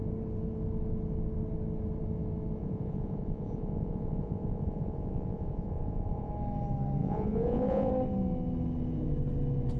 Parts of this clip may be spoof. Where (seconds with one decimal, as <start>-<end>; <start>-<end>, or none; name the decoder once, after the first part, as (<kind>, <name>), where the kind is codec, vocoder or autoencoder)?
2.6-6.3 (vocoder, Vocos); 7.0-7.9